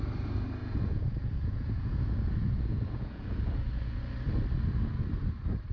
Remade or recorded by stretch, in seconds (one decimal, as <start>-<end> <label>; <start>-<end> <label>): 0.0-0.6 recorded; 0.6-4.0 remade; 4.0-5.7 recorded